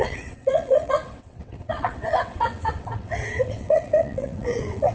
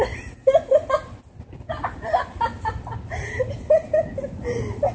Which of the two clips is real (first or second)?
second